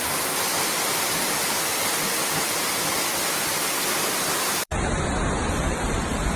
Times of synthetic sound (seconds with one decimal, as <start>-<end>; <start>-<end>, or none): 0.0-4.7; 5.5-6.4